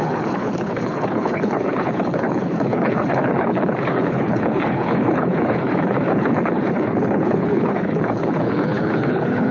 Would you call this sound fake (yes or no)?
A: yes